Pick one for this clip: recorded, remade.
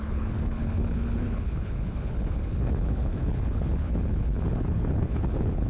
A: remade